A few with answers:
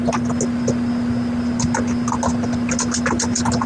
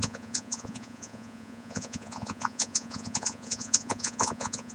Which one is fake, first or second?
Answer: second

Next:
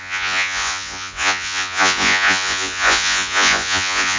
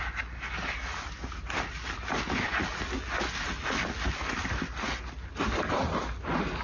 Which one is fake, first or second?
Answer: first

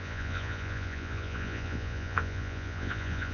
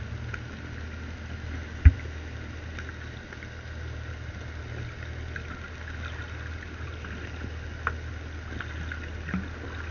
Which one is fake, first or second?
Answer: first